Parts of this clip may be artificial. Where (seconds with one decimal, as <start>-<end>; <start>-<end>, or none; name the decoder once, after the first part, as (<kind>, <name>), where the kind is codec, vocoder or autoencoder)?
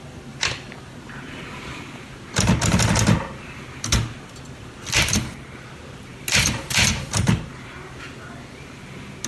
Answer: none